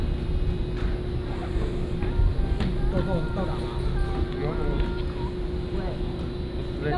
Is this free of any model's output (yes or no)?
yes